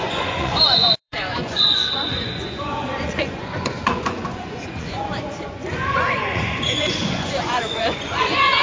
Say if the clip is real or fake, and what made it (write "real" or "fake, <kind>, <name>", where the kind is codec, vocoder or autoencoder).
fake, vocoder, Vocos